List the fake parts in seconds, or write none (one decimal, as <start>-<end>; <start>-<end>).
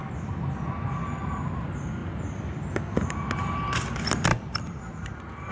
4.3-5.5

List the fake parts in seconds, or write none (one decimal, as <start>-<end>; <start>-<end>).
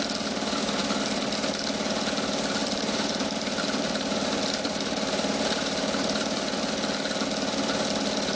2.6-6.7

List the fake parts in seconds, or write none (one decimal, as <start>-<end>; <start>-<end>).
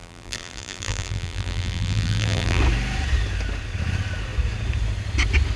0.0-2.6